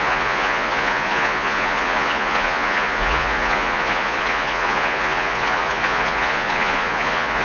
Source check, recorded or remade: remade